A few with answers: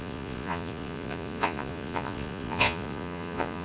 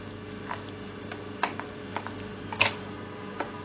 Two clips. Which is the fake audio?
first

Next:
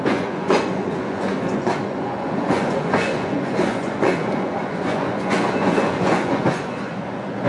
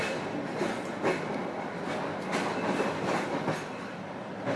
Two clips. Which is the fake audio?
first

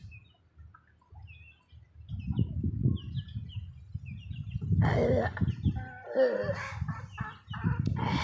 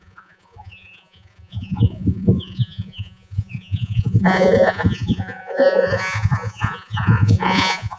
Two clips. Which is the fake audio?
second